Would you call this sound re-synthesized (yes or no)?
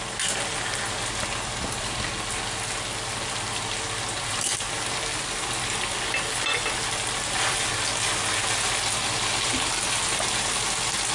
no